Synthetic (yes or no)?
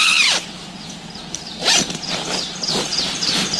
no